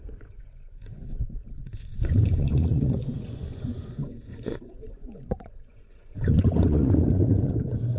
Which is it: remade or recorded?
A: remade